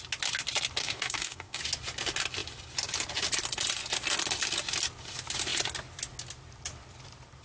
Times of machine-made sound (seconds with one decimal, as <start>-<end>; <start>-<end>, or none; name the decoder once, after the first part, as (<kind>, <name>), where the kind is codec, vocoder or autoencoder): 0.8-1.6 (codec, DAC)